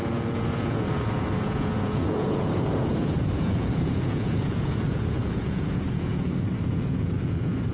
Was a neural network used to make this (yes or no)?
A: yes